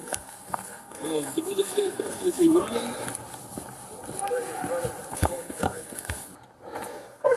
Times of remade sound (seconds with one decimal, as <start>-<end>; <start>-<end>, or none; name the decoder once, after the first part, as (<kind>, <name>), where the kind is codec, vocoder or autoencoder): 0.0-2.6 (codec, SNAC); 5.1-6.3; 6.9-7.4